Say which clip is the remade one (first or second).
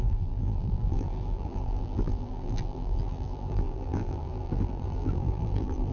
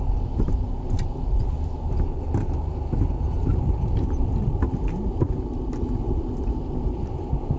first